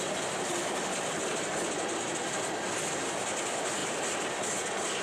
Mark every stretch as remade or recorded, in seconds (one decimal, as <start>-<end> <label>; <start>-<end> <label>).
0.0-3.8 recorded; 3.8-4.4 remade; 4.4-5.0 recorded